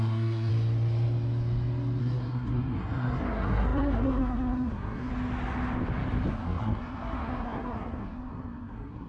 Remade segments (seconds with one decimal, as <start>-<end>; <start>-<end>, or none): 0.0-0.5; 2.0-5.1; 6.3-9.1